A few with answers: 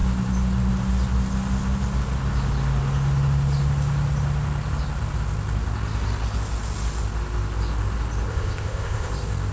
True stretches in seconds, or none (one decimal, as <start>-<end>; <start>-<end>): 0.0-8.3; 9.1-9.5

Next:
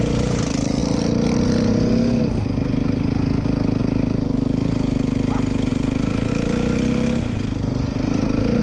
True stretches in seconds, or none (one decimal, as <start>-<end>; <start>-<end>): 0.0-8.6

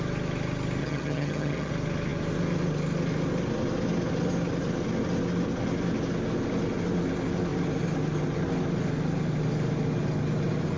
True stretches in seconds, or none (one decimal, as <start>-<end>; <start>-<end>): 0.0-0.8; 1.7-10.8

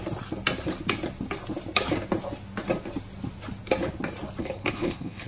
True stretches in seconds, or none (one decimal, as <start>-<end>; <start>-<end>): 0.0-4.4

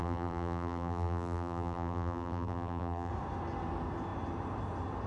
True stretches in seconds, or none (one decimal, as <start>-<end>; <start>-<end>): 3.1-5.1

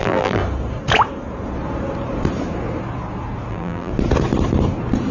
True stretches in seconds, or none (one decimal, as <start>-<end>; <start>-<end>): 0.4-3.5; 3.9-5.1

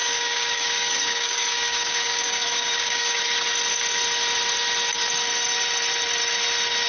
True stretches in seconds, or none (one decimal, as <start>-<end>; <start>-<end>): 3.2-6.9